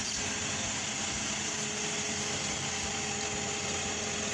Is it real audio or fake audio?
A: real